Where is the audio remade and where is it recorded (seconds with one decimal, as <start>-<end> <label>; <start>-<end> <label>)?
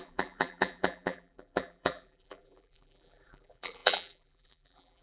0.0-5.0 remade